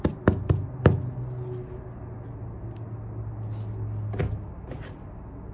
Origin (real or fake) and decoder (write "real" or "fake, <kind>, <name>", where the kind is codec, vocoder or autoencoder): real